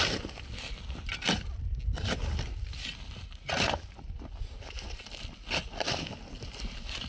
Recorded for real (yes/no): yes